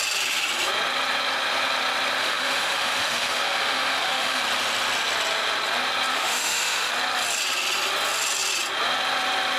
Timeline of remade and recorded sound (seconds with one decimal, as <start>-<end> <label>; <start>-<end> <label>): 0.0-2.2 recorded; 2.2-4.4 remade; 4.4-6.1 recorded; 6.1-6.9 remade; 6.9-9.6 recorded